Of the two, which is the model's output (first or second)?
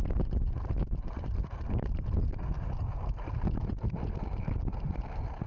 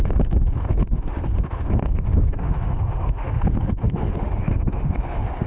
second